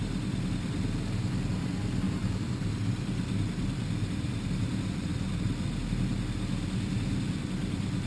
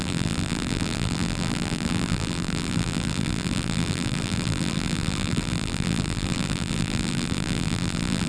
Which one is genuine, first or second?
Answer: first